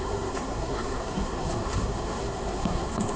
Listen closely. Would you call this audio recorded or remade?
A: remade